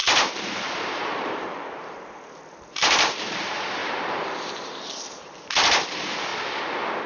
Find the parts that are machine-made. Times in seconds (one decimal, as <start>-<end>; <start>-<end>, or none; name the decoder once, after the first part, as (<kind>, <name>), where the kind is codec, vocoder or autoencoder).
0.0-6.3 (vocoder, BigVGAN v2)